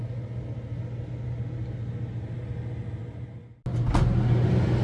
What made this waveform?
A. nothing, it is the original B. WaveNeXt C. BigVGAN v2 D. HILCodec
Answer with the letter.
A